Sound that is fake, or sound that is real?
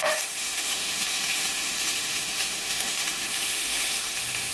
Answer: fake